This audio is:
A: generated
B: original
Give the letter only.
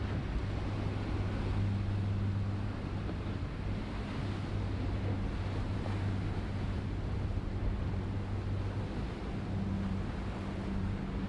B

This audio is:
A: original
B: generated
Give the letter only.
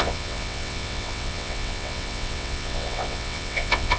B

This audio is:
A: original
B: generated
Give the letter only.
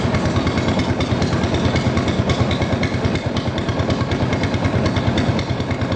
A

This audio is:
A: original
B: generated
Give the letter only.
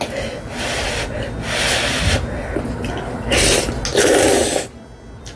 A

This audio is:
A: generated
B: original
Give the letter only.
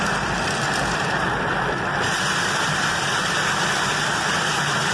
A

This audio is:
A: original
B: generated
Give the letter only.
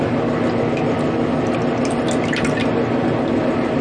A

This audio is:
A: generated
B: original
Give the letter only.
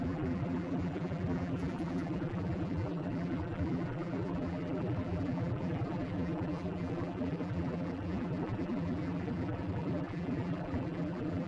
A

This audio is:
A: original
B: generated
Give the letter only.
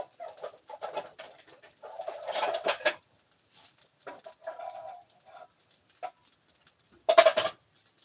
A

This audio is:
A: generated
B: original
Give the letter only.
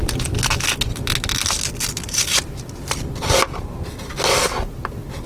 B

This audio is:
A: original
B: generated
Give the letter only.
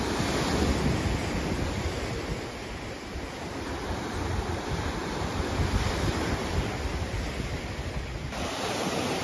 A